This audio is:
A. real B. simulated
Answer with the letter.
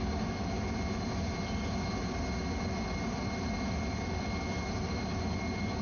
A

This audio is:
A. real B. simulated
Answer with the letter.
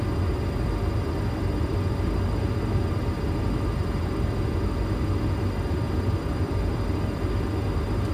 A